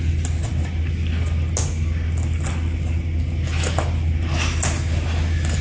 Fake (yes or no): no